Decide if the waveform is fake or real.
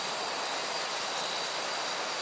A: real